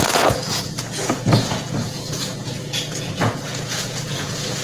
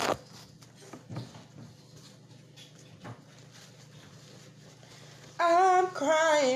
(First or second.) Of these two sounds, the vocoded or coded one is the first